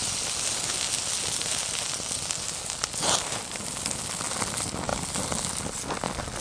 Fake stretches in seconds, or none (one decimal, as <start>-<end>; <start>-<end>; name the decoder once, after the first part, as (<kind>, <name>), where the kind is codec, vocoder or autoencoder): none